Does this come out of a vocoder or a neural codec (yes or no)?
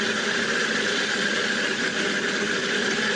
no